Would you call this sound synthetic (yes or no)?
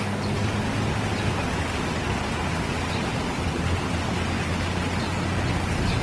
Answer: no